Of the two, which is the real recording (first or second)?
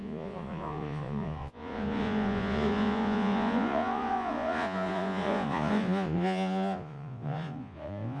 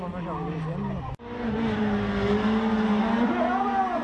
second